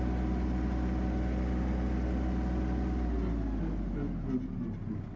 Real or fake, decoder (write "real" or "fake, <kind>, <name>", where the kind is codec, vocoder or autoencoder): real